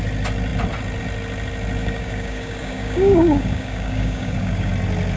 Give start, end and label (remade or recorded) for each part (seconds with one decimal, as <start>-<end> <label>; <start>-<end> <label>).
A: 0.0-1.8 recorded; 1.8-4.7 remade; 4.7-5.2 recorded